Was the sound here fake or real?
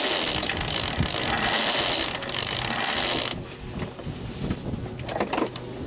real